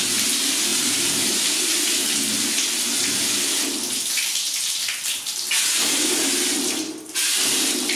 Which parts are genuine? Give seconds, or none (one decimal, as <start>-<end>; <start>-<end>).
0.0-0.7; 1.8-8.0